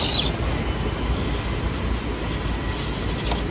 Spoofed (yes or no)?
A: no